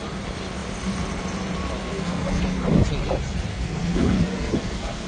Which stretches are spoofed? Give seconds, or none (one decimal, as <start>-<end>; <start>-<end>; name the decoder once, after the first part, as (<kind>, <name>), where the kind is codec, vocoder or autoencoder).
1.8-2.4 (codec, SNAC); 3.5-5.1